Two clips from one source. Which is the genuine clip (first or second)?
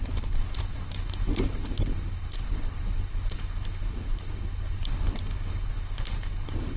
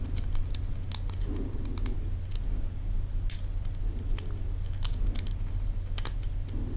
second